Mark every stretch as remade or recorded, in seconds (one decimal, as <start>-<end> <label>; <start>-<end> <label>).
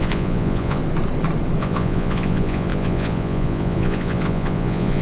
0.0-0.8 remade; 0.8-1.6 recorded; 1.6-5.0 remade